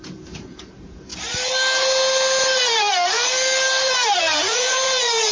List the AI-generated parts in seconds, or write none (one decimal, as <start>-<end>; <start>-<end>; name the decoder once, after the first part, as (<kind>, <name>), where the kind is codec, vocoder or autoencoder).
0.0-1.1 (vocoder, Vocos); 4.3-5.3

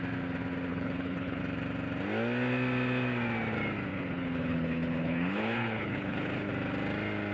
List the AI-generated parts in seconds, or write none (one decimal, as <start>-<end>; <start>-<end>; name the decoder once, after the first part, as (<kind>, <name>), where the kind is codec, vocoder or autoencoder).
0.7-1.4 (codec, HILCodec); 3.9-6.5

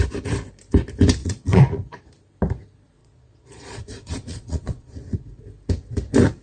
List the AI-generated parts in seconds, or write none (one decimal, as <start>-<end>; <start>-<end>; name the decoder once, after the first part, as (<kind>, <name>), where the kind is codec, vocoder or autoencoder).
1.2-2.0 (vocoder, Vocos); 3.0-5.4

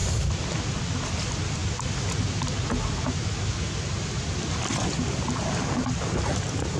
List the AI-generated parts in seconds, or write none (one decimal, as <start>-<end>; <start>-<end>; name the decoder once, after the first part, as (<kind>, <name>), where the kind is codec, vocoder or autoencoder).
none

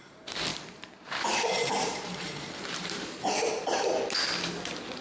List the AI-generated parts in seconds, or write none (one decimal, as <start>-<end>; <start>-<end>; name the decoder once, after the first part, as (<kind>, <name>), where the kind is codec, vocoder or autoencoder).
0.5-3.5 (vocoder, BigVGAN v2)